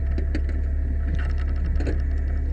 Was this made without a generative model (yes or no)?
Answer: yes